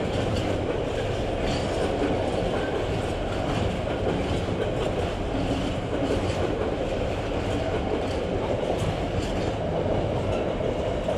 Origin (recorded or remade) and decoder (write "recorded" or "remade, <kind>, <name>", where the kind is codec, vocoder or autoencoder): recorded